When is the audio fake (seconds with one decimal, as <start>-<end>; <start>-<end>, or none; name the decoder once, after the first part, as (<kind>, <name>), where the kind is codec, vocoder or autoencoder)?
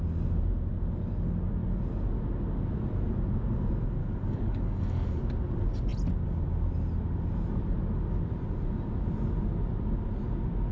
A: 4.0-5.2 (codec, DAC)